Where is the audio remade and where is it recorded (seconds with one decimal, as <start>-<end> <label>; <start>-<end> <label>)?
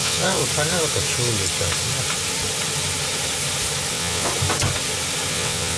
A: 0.0-0.4 remade; 0.4-3.9 recorded; 3.9-4.3 remade; 4.3-5.3 recorded; 5.3-5.8 remade